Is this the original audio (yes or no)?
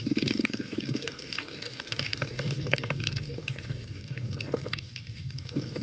no